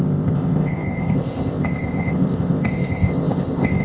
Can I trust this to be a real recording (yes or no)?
no